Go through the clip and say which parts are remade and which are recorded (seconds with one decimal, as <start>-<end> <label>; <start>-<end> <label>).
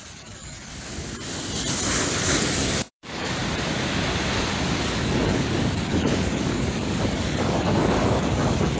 0.0-0.7 remade; 0.7-2.0 recorded; 2.0-3.4 remade; 3.4-4.8 recorded; 4.8-8.8 remade